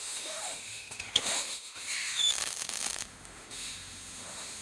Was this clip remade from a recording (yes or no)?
yes